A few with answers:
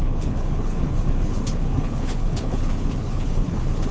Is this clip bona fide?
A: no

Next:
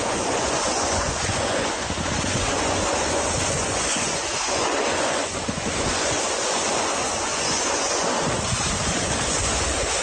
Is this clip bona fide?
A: no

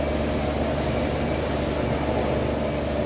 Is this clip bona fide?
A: yes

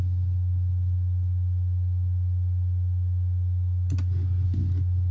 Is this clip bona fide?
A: yes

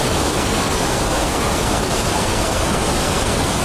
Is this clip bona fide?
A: no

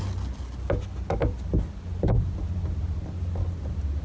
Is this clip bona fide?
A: yes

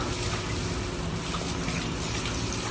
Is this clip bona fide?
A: yes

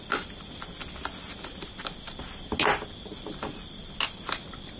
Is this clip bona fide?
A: yes